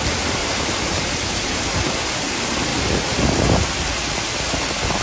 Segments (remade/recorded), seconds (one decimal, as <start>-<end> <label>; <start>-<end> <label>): 0.0-0.4 recorded; 0.4-2.3 remade; 2.3-2.7 recorded; 2.7-3.6 remade; 3.6-5.0 recorded